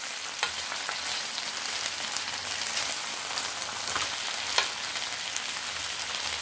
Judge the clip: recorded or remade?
recorded